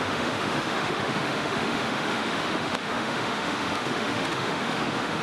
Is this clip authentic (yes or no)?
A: no